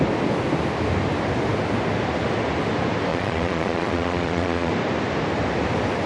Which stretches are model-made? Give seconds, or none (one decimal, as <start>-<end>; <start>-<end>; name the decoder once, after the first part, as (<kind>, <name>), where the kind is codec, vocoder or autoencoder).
3.1-4.7 (vocoder, Vocos)